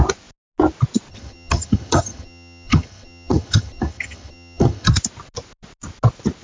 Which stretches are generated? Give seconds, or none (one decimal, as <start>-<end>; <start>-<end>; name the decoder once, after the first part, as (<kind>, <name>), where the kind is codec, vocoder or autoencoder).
1.1-4.9 (vocoder, HiFi-GAN)